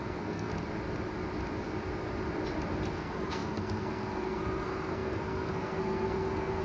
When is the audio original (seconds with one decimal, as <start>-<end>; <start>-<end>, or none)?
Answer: 0.5-2.9